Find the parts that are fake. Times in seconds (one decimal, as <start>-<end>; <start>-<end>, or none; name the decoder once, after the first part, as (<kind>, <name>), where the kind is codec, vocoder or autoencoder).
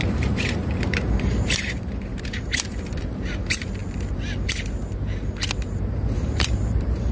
0.0-3.8 (vocoder, BigVGAN v2); 4.5-7.1